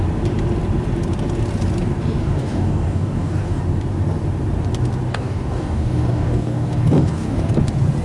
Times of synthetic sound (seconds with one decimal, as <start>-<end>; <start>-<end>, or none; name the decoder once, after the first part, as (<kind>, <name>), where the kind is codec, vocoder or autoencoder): 2.2-3.6 (codec, DAC); 5.1-7.5

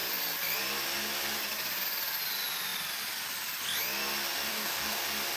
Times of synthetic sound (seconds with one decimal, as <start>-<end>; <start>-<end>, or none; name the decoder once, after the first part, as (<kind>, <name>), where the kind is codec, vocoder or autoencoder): 4.5-5.0 (codec, DAC)

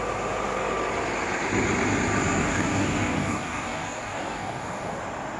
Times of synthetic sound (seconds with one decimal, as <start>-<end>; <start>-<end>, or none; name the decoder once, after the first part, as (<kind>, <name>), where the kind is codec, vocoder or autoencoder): 2.4-5.0 (codec, DAC)

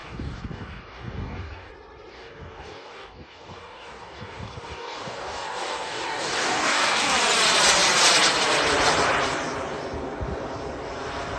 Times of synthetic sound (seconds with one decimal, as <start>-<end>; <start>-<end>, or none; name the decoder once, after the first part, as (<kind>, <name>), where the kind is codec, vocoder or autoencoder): 0.0-1.7 (codec, DAC); 2.1-7.2

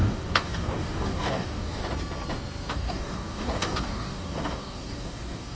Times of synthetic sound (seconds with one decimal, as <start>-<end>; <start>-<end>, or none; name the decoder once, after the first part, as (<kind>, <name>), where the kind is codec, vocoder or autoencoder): 0.0-1.8 (codec, DAC); 2.7-5.6